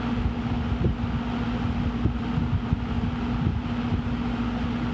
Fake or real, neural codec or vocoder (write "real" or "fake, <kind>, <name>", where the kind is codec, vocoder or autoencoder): real